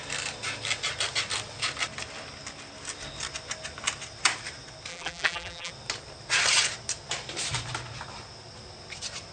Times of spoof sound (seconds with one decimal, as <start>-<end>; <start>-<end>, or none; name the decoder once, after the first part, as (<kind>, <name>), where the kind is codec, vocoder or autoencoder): 4.9-5.7 (vocoder, BigVGAN v2)